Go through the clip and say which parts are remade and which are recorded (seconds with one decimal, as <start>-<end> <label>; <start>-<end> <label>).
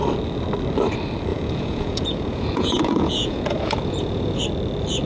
0.0-1.3 recorded; 1.3-4.4 remade; 4.4-5.1 recorded